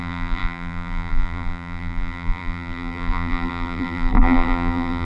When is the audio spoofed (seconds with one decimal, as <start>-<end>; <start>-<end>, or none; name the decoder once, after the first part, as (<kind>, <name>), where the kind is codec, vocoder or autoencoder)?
0.0-5.0 (vocoder, BigVGAN v2)